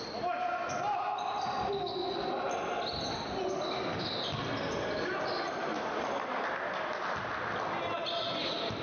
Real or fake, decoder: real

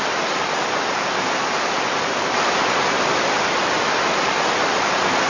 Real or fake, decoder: real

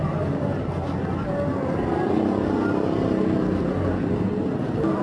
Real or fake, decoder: real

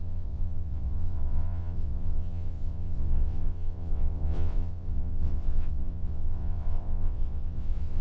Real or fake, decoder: fake, vocoder, WaveNeXt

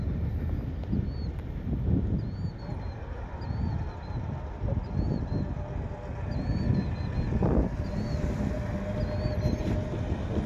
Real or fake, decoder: real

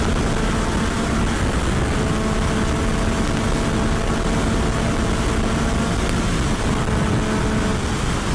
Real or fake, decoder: real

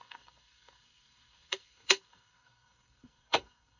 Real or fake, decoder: fake, codec, SNAC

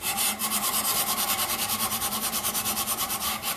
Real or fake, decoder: fake, vocoder, BigVGAN v2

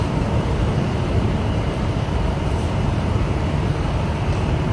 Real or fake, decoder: fake, vocoder, BigVGAN v2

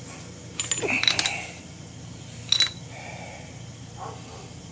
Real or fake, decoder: real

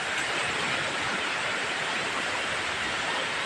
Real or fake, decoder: fake, vocoder, BigVGAN v2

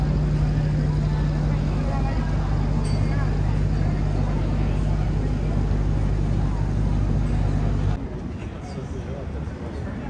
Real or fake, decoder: real